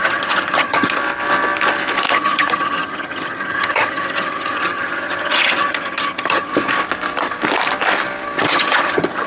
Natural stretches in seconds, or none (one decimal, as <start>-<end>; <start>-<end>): 1.0-2.1; 6.5-8.4